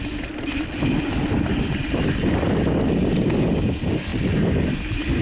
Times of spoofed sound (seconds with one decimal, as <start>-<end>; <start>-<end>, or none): 0.0-5.2